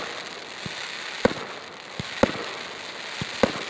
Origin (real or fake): real